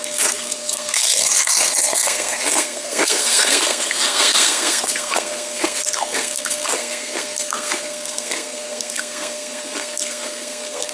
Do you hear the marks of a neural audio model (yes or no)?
yes